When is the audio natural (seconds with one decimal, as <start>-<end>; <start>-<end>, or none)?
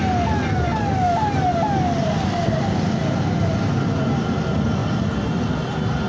0.0-6.1